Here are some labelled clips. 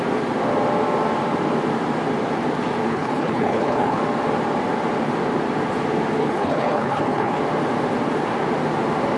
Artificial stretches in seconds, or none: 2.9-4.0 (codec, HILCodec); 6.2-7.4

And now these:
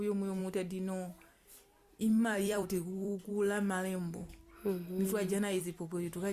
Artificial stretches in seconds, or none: 0.4-3.3 (vocoder, BigVGAN v2)

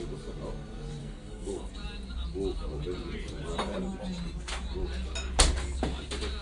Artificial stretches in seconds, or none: 1.0-1.7 (codec, SNAC)

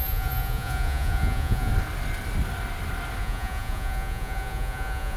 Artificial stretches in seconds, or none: 0.0-1.7 (vocoder, Vocos); 3.2-5.2

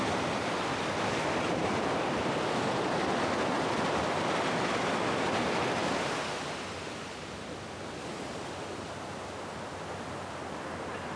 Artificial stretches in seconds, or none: none

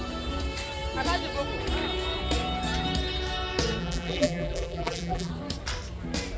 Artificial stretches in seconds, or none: 3.8-5.3 (vocoder, BigVGAN v2)

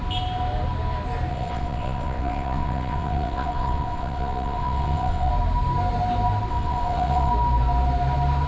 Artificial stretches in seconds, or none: 1.3-5.3 (vocoder, WaveNeXt); 6.5-7.3

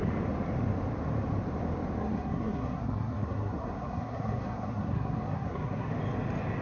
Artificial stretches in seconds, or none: 2.0-5.9 (codec, SNAC)